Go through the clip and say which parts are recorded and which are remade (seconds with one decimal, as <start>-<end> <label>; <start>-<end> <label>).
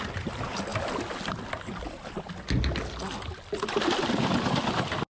0.0-5.1 recorded